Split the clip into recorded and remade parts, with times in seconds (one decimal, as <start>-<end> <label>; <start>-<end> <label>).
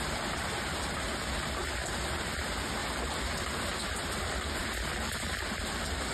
0.0-6.1 recorded